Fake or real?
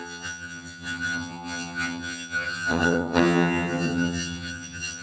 fake